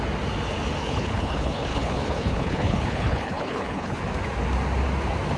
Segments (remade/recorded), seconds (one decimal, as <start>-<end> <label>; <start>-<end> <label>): 0.0-0.8 recorded; 0.8-4.0 remade; 4.0-5.4 recorded